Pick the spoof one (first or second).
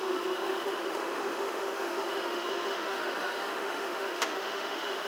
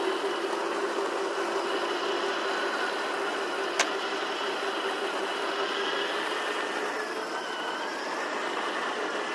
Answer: first